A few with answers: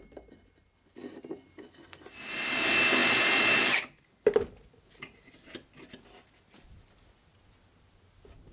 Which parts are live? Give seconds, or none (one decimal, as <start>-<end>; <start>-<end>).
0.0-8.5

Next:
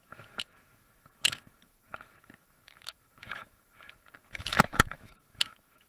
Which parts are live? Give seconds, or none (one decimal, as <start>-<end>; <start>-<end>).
none

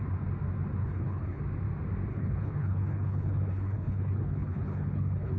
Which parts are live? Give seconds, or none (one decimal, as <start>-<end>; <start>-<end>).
0.0-0.8; 1.4-2.1